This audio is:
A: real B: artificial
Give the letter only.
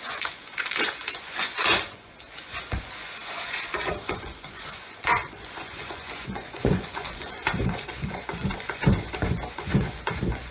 B